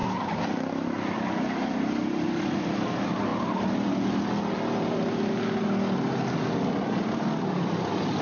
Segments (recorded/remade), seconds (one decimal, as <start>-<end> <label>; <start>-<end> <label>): 0.0-8.2 recorded